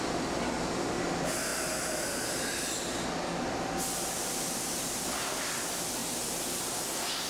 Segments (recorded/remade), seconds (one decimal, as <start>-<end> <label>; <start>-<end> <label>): 0.0-7.3 recorded